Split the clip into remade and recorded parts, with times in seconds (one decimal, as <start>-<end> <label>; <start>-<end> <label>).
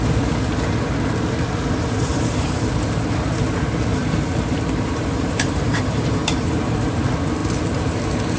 0.0-2.1 recorded; 2.1-2.7 remade; 2.7-3.9 recorded; 3.9-6.9 remade; 6.9-8.4 recorded